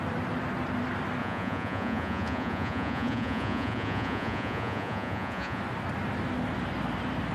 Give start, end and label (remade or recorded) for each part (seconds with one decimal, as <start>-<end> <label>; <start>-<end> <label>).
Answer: 0.0-1.2 recorded; 1.2-5.6 remade; 5.6-7.3 recorded